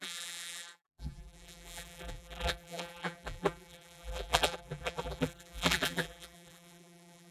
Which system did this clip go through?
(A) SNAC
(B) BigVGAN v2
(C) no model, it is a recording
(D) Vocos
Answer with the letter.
B